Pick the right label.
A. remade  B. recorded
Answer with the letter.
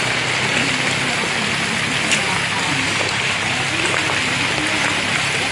B